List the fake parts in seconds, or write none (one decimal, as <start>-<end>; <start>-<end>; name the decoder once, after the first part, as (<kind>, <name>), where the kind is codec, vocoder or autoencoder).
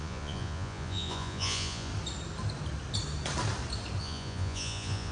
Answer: 0.0-1.9 (vocoder, Vocos); 4.0-5.1